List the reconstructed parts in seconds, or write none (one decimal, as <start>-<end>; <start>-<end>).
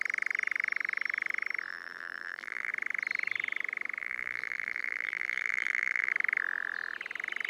1.7-2.7; 4.0-6.1